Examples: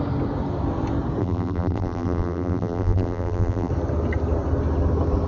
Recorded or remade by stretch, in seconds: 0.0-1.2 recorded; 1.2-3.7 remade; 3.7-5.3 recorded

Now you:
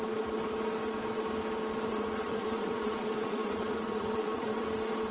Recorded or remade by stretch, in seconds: 0.0-1.9 recorded; 1.9-4.6 remade; 4.6-5.1 recorded

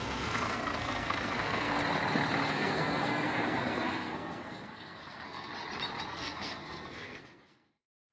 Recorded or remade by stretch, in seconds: 0.0-1.8 remade; 1.8-2.5 recorded; 2.5-5.5 remade; 5.5-6.1 recorded; 6.1-8.1 remade

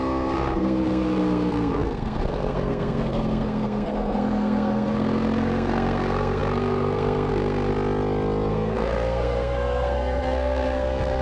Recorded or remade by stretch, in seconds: 0.0-7.7 remade; 7.7-8.5 recorded; 8.5-11.2 remade